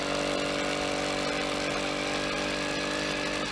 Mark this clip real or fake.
real